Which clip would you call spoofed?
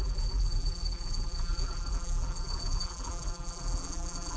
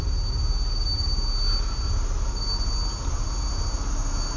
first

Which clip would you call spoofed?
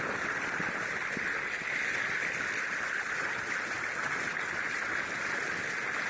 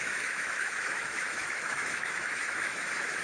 second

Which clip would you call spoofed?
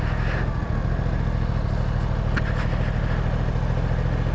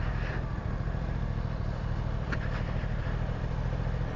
second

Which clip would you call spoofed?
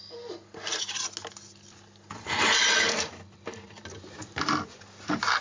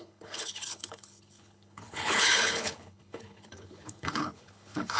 second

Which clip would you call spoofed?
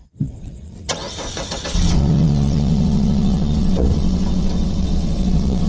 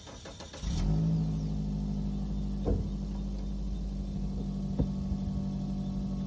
first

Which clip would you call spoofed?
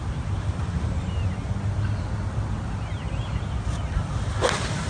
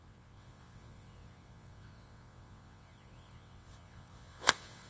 second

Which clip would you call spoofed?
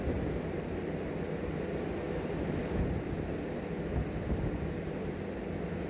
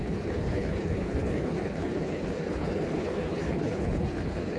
second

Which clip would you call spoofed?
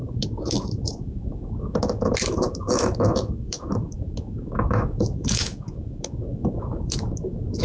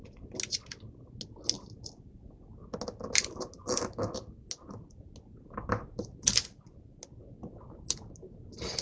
first